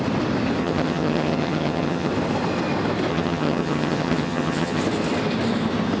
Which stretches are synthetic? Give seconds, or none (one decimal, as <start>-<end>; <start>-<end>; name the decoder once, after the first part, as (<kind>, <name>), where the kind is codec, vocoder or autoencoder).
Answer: 0.6-2.1 (vocoder, HiFi-GAN); 3.1-4.8